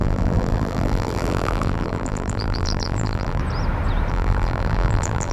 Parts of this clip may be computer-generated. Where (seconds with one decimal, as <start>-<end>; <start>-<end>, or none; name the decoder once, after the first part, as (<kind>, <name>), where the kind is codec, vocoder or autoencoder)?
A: 0.0-3.4 (vocoder, BigVGAN v2); 4.1-5.3